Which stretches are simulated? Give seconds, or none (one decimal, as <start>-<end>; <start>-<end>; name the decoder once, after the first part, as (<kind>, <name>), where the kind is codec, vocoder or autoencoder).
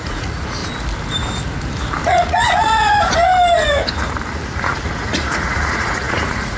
0.0-0.6 (vocoder, Vocos); 2.0-2.7; 4.3-6.6